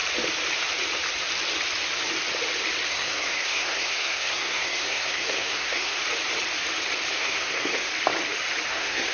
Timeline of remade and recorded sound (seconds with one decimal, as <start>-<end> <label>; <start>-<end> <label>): 0.0-2.9 recorded; 2.9-6.0 remade; 6.0-7.1 recorded; 7.1-7.9 remade; 7.9-8.7 recorded; 8.7-9.1 remade